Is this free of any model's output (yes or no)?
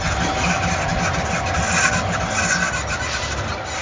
yes